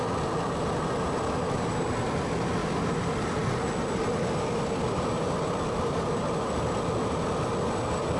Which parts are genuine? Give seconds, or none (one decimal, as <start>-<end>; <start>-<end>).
0.0-2.6; 6.8-8.2